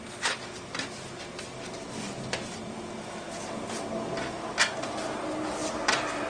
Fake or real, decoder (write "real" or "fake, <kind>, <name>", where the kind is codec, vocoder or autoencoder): real